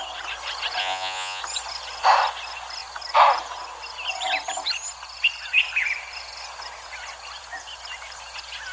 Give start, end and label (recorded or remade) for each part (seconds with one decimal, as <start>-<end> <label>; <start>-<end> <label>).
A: 0.0-0.8 recorded; 0.8-1.4 remade; 1.4-8.7 recorded